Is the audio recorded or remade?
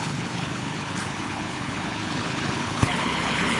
remade